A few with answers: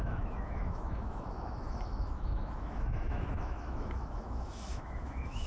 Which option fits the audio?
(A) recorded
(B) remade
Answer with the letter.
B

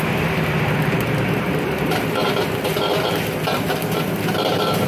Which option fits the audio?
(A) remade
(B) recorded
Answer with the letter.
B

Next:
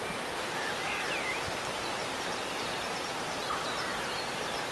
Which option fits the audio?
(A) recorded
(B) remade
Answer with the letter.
B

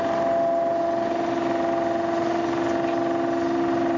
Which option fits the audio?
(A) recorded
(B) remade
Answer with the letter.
A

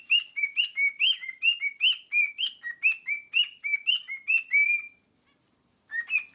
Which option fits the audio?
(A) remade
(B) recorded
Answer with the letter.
B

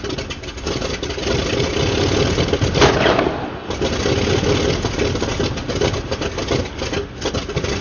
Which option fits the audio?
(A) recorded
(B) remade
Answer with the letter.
A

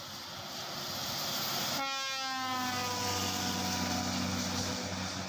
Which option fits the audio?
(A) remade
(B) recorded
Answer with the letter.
B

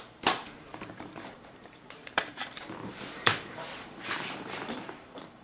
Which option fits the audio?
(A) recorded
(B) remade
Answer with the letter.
B